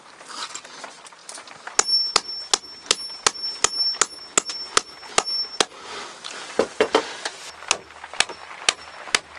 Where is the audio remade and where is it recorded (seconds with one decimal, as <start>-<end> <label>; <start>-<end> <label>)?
0.0-9.4 recorded

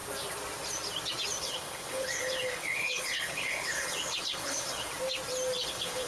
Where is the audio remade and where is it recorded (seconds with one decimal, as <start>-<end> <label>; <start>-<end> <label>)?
0.0-1.4 recorded; 1.4-4.9 remade; 4.9-5.6 recorded; 5.6-6.1 remade

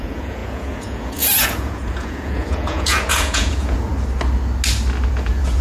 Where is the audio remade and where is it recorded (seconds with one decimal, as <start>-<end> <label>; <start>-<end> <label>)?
0.0-3.9 remade; 3.9-5.1 recorded; 5.1-5.6 remade

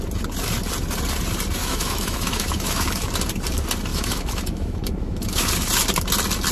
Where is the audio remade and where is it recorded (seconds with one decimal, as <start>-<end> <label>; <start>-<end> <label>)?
0.0-1.6 recorded; 1.6-3.1 remade; 3.1-3.9 recorded; 3.9-5.5 remade; 5.5-6.5 recorded

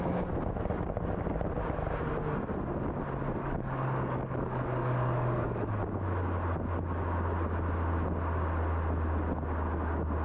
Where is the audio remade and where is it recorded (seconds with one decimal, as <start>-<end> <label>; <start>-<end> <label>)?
0.0-3.4 recorded; 3.4-5.7 remade; 5.7-10.2 recorded